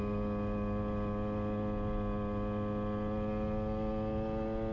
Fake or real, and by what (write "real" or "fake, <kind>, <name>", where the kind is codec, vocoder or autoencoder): real